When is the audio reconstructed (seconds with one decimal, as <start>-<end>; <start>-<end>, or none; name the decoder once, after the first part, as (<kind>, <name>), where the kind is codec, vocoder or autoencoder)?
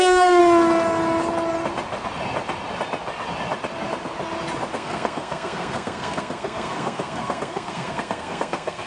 0.0-0.4 (codec, SNAC); 4.7-8.9